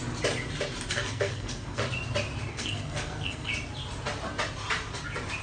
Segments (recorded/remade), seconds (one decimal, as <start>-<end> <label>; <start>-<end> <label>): 0.0-0.9 recorded; 0.9-1.8 remade; 1.8-2.5 recorded; 2.5-3.5 remade; 3.5-5.4 recorded